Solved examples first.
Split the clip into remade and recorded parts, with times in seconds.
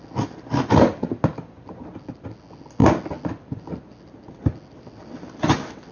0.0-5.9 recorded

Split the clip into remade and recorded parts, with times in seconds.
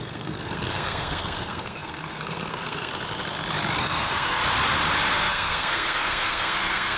0.0-2.9 remade; 2.9-3.8 recorded; 3.8-4.4 remade; 4.4-5.3 recorded; 5.3-7.0 remade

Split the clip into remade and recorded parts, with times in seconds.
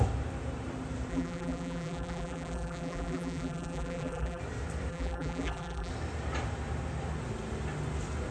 0.0-1.1 recorded; 1.1-4.4 remade; 4.4-4.9 recorded; 4.9-5.9 remade; 5.9-8.3 recorded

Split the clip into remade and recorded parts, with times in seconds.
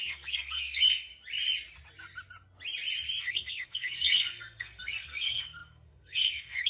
0.0-1.1 remade; 1.1-3.2 recorded; 3.2-6.7 remade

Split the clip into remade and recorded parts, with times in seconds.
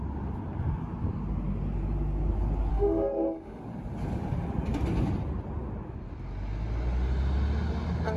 0.0-2.7 recorded; 2.7-3.6 remade; 3.6-8.2 recorded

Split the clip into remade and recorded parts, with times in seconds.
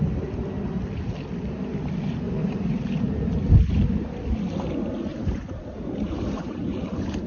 0.0-2.4 recorded; 2.4-3.3 remade; 3.3-5.1 recorded; 5.1-7.3 remade